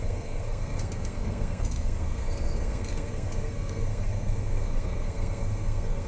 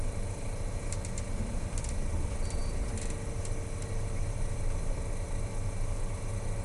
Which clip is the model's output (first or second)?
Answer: first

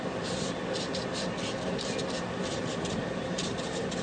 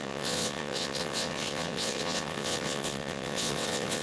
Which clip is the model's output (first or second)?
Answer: second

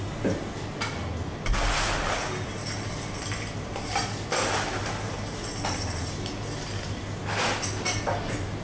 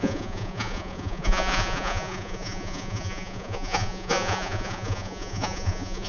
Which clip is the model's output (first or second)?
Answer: second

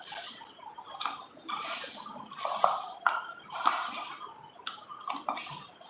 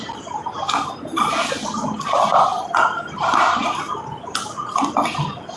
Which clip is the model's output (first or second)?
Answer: first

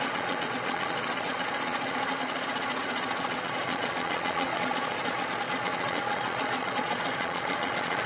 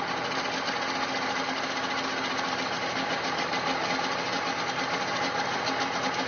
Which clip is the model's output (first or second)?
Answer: first